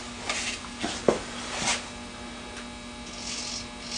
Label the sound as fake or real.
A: real